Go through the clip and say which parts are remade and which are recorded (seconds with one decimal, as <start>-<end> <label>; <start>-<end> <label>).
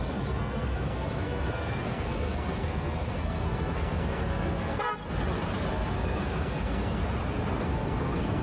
0.0-5.0 remade; 5.0-5.7 recorded; 5.7-7.0 remade; 7.0-7.6 recorded; 7.6-8.4 remade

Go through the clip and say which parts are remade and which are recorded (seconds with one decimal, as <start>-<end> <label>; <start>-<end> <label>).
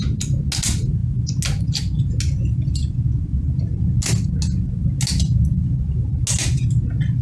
0.0-7.2 recorded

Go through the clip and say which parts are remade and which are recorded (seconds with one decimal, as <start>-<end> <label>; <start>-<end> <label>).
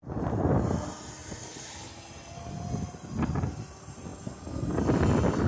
0.0-5.5 recorded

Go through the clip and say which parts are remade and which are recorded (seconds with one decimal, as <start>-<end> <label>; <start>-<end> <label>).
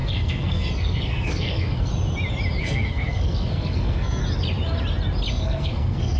0.0-1.9 remade; 1.9-2.6 recorded; 2.6-4.2 remade; 4.2-5.3 recorded; 5.3-6.2 remade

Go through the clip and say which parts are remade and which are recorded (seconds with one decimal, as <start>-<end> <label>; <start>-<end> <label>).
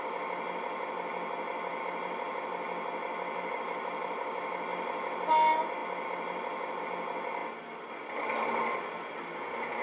0.0-9.8 recorded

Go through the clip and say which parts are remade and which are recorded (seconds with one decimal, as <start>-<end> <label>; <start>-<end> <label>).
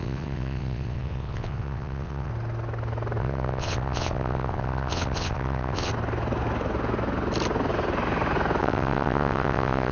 0.0-2.3 remade; 2.3-3.2 recorded; 3.2-5.9 remade; 5.9-8.6 recorded; 8.6-9.9 remade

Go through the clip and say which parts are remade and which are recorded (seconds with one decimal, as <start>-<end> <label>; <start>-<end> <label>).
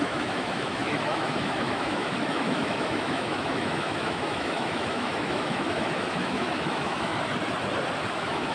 0.0-7.1 remade; 7.1-8.1 recorded; 8.1-8.5 remade